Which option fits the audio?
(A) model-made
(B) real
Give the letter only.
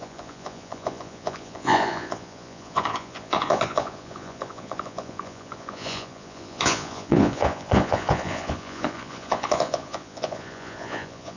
A